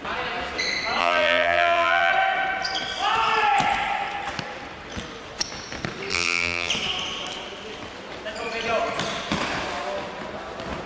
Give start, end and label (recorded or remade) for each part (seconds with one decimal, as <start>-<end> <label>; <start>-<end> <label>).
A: 0.0-1.0 recorded; 1.0-2.1 remade; 2.1-6.1 recorded; 6.1-6.7 remade; 6.7-10.9 recorded